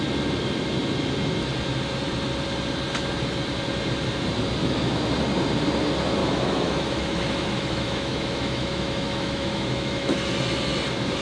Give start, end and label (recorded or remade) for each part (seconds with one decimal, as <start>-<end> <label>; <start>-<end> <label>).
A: 0.0-4.6 recorded; 4.6-5.1 remade; 5.1-6.2 recorded; 6.2-10.2 remade; 10.2-11.2 recorded